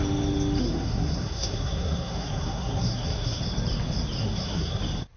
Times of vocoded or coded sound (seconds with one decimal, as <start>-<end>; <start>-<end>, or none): 0.6-3.4; 4.2-4.8